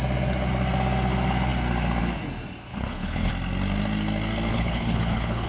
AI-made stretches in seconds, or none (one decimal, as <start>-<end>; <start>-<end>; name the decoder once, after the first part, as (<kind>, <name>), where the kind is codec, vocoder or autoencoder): 2.6-3.3 (codec, HILCodec); 4.5-5.5

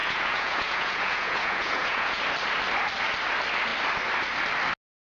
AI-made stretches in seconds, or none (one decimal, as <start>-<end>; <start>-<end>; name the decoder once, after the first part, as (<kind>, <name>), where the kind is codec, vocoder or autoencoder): 0.0-2.2 (vocoder, Vocos)

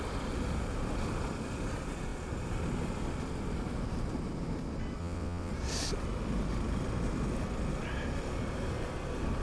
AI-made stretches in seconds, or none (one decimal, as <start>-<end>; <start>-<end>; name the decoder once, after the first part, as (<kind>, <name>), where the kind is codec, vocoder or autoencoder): 5.0-5.5 (vocoder, WaveNeXt)

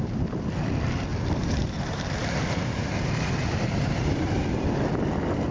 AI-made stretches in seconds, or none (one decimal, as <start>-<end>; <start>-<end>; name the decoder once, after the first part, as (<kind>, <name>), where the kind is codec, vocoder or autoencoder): 1.1-4.4 (vocoder, BigVGAN v2)

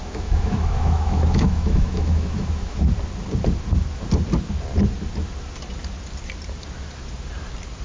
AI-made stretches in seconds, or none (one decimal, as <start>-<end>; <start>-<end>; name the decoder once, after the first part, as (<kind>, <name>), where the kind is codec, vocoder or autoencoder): 0.0-2.8 (autoencoder, DAC-VAE)